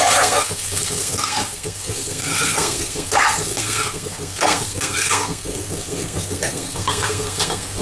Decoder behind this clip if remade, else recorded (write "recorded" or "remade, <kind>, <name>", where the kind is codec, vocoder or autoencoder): remade, codec, SNAC